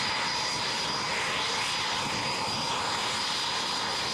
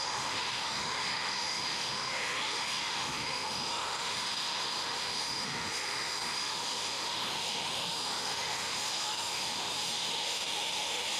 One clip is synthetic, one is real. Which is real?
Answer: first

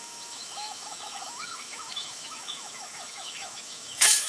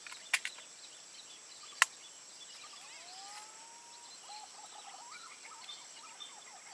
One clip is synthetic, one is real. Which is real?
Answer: second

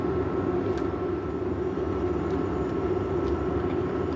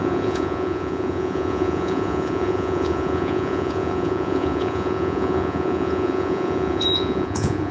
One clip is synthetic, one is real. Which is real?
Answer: first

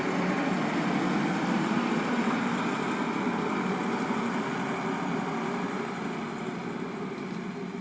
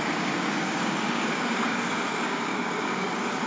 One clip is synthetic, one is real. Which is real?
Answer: first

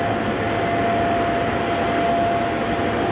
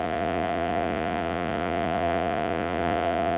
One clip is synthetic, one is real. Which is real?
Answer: first